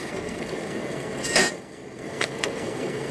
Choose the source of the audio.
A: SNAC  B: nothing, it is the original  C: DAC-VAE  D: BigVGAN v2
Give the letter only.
A